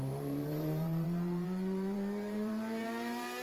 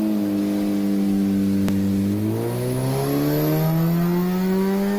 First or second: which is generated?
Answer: first